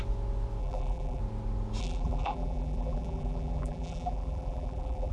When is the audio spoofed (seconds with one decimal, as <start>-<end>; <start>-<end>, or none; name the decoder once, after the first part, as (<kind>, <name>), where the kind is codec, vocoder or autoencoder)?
0.6-1.2 (vocoder, BigVGAN v2); 1.8-5.1